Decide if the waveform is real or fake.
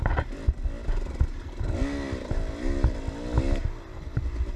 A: real